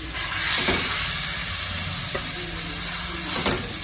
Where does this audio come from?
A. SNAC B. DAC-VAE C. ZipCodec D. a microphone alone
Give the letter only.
D